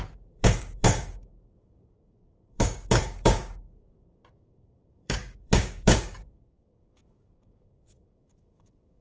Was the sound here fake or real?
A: fake